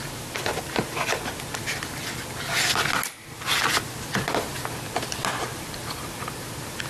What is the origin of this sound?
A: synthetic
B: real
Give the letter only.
B